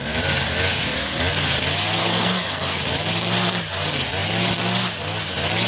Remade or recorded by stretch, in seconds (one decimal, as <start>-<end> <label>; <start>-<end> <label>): 0.0-2.0 recorded; 2.0-2.8 remade; 2.8-5.7 recorded